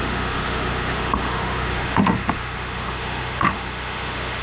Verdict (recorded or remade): remade